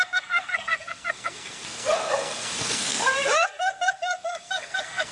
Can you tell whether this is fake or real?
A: fake